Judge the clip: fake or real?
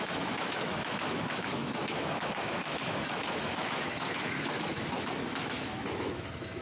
fake